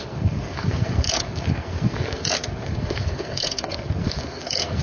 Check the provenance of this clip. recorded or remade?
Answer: remade